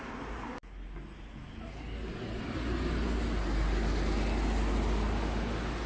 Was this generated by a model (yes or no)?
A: no